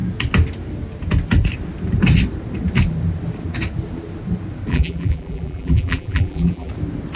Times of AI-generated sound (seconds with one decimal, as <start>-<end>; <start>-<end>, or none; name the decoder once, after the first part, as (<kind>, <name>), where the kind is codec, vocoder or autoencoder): 4.7-6.7 (vocoder, BigVGAN v2)

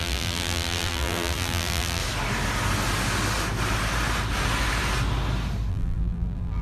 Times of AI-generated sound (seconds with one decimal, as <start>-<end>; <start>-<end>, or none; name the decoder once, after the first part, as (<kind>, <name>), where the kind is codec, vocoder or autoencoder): 0.0-2.0 (vocoder, BigVGAN v2); 5.7-6.6